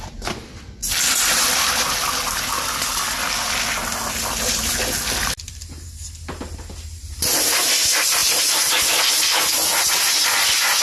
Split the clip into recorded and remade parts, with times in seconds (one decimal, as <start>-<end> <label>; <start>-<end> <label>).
0.0-10.8 recorded